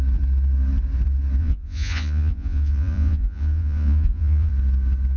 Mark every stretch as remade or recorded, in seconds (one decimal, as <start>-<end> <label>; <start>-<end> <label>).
0.0-1.4 recorded; 1.4-4.5 remade; 4.5-5.2 recorded